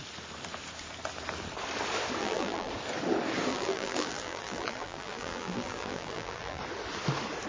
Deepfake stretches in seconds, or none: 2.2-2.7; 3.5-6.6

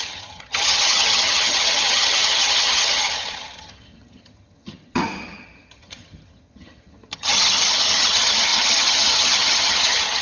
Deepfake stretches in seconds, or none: 0.0-10.2